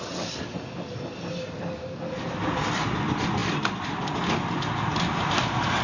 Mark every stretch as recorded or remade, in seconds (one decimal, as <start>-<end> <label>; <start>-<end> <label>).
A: 0.0-5.8 recorded